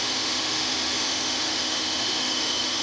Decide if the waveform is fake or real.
fake